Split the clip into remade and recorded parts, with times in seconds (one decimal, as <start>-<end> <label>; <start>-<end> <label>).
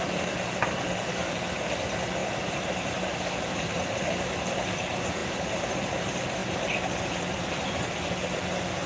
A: 0.0-2.2 recorded; 2.2-3.3 remade; 3.3-8.9 recorded